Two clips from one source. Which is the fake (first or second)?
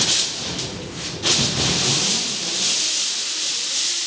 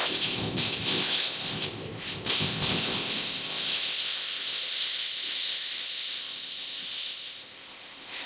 second